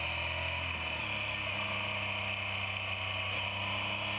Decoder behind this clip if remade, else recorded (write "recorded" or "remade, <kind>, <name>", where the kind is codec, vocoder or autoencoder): recorded